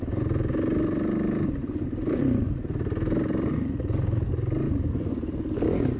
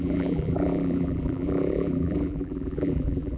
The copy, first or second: second